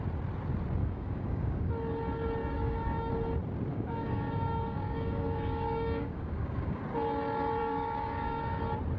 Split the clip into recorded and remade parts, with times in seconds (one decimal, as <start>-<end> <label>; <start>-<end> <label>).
0.0-0.8 recorded; 0.8-1.7 remade; 1.7-2.4 recorded; 2.4-3.1 remade; 3.1-3.7 recorded; 3.7-6.8 remade; 6.8-7.6 recorded; 7.6-8.6 remade; 8.6-9.0 recorded